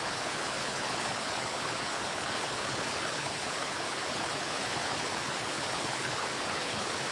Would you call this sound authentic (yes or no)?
no